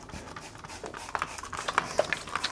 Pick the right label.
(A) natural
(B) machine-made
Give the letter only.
A